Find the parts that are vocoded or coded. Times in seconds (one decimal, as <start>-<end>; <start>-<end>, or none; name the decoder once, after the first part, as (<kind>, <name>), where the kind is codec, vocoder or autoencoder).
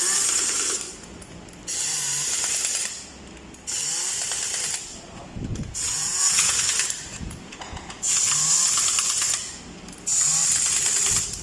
5.5-6.6 (vocoder, Vocos); 7.1-8.2